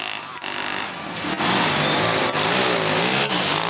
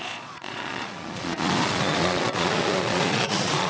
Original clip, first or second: first